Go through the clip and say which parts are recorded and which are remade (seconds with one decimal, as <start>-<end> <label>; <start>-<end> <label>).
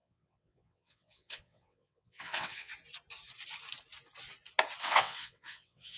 0.0-2.7 remade; 2.7-4.8 recorded; 4.8-6.0 remade